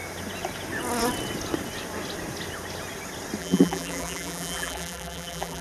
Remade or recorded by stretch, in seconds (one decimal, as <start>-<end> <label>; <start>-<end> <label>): 0.0-3.4 recorded; 3.4-5.6 remade

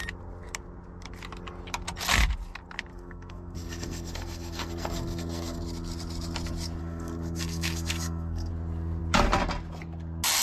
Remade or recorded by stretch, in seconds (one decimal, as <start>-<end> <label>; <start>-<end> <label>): 0.0-2.9 recorded; 2.9-5.6 remade; 5.6-6.8 recorded; 6.8-8.5 remade; 8.5-10.4 recorded